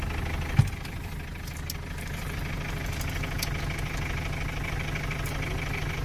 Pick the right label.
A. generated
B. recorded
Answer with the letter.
B